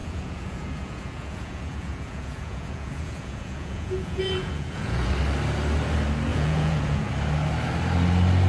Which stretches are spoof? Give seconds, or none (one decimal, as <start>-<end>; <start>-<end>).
0.0-5.1; 6.3-7.1

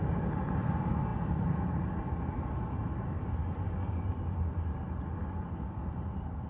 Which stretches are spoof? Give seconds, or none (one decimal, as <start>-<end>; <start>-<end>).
none

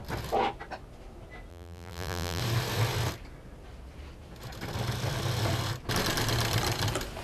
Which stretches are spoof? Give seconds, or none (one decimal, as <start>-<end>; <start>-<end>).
1.5-2.4

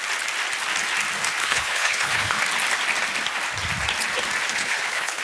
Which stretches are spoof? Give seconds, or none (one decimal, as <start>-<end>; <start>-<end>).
1.4-2.4; 4.5-5.2